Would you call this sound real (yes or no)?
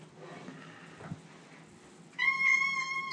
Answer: yes